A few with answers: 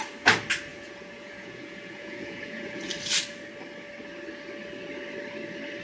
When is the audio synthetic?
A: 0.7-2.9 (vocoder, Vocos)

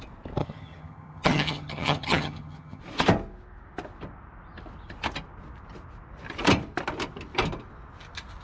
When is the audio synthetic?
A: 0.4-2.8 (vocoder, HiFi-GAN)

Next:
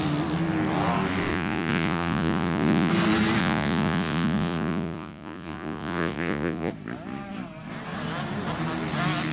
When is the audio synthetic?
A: 1.3-2.9 (vocoder, Vocos); 3.4-6.7

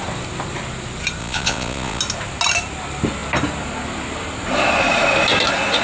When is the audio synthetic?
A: 1.2-2.0 (vocoder, Vocos)